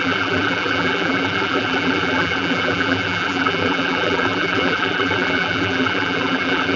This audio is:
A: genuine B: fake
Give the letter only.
B